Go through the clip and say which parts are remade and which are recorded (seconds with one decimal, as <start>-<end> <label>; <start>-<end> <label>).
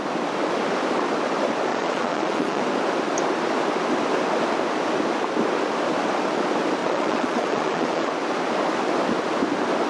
0.0-1.7 recorded; 1.7-2.6 remade; 2.6-6.8 recorded; 6.8-8.1 remade; 8.1-9.9 recorded